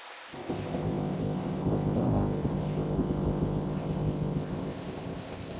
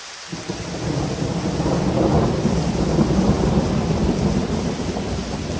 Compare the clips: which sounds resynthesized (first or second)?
first